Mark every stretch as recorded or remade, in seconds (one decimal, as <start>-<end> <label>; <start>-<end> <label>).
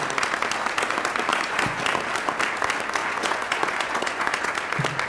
0.0-1.3 recorded; 1.3-1.8 remade; 1.8-3.0 recorded; 3.0-4.5 remade; 4.5-5.1 recorded